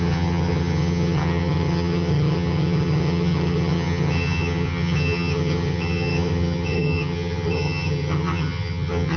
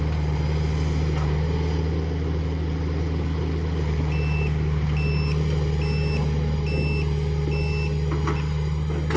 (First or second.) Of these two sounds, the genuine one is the second